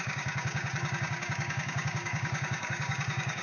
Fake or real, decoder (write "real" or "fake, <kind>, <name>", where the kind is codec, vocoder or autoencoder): fake, codec, DAC